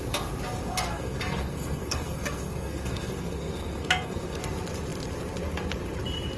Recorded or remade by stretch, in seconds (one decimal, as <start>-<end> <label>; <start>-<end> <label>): 0.0-0.6 recorded; 0.6-4.4 remade; 4.4-6.4 recorded